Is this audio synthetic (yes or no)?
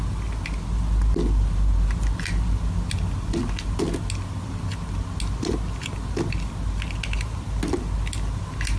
no